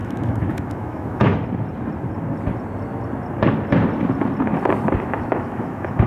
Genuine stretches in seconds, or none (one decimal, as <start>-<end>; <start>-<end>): 1.3-5.0